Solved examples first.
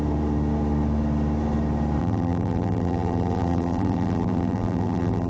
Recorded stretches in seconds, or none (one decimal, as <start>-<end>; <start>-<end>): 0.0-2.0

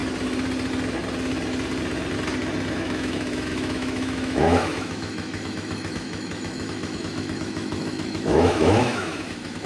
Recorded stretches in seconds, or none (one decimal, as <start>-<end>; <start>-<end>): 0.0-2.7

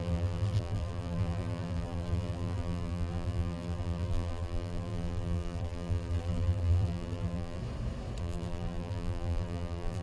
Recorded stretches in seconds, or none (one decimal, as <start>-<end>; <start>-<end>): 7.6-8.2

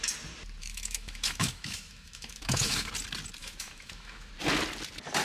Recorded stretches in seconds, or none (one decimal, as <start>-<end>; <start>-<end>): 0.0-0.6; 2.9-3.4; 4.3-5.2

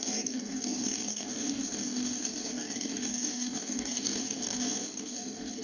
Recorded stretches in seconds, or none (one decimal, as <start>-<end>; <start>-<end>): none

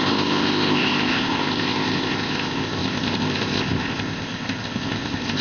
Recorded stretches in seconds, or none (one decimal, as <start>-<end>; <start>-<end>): none